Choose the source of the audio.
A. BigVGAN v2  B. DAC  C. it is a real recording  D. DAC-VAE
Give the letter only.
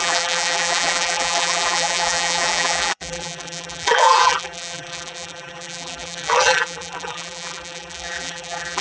A